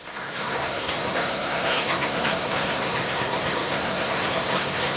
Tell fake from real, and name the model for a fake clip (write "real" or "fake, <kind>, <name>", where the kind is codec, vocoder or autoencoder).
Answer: fake, codec, SNAC